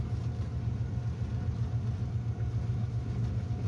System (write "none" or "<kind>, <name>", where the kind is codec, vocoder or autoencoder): none